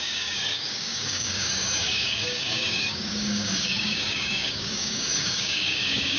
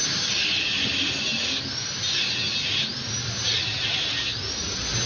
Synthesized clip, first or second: first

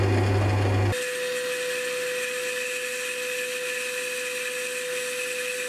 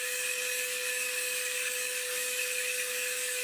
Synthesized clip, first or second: second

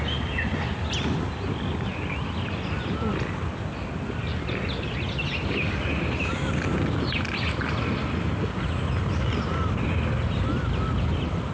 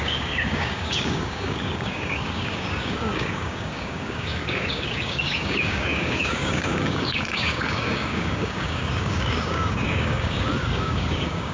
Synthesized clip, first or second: second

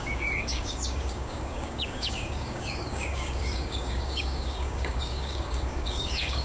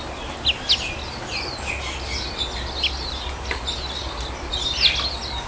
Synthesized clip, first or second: first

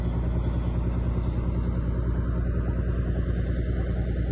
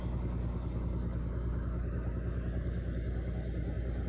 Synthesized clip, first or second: second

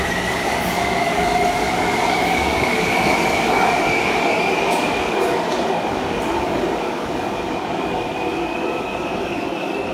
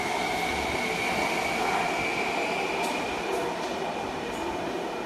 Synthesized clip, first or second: first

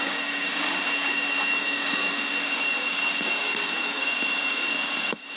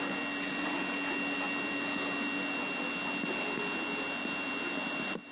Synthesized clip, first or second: first